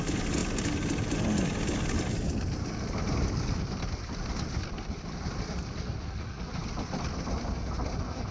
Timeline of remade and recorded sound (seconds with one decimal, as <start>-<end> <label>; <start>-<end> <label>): 0.0-8.3 recorded